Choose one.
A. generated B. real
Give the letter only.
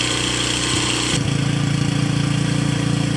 B